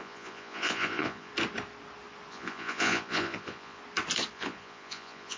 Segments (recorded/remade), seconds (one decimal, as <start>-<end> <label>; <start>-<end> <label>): 0.0-1.3 remade; 1.3-2.3 recorded; 2.3-3.8 remade; 3.8-4.3 recorded; 4.3-5.4 remade